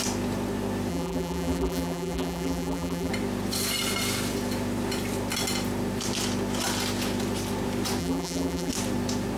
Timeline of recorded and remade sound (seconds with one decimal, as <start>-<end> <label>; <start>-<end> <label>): 0.0-0.9 recorded; 0.9-3.1 remade; 3.1-8.0 recorded; 8.0-8.7 remade; 8.7-9.4 recorded